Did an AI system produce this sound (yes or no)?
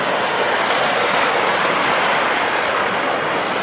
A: no